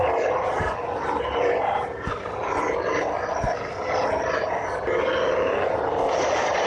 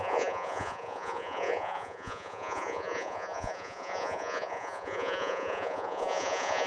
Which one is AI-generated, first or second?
second